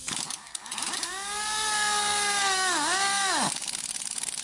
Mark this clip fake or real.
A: fake